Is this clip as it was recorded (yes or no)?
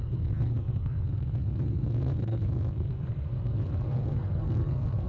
no